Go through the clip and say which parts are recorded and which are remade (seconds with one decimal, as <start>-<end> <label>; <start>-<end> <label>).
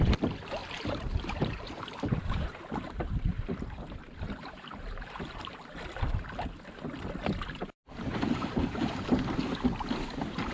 0.0-0.6 recorded; 0.6-5.8 remade; 5.8-7.6 recorded; 7.6-9.3 remade; 9.3-10.5 recorded